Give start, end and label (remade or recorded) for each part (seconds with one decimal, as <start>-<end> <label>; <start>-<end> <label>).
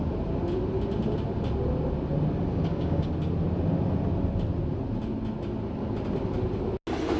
0.0-2.5 recorded; 2.5-3.1 remade; 3.1-7.2 recorded